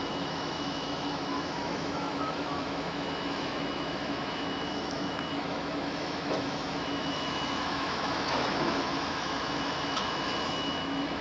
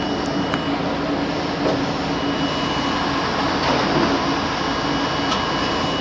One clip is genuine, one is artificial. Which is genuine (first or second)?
second